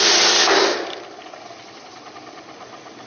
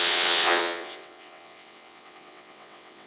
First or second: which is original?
first